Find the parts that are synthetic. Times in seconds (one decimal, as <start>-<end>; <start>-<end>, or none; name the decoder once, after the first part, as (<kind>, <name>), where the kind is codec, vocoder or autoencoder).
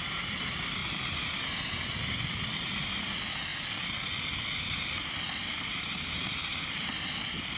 0.0-0.8 (vocoder, BigVGAN v2); 2.2-3.5; 4.8-7.6